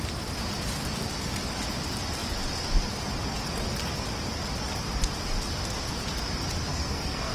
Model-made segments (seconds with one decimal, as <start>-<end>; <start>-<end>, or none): 6.7-7.3